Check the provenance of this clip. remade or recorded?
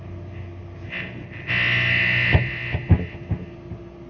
recorded